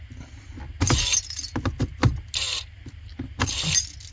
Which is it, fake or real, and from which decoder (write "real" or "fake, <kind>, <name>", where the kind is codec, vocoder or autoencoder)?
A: real